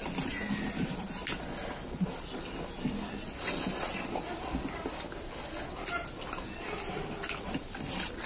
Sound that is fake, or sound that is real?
real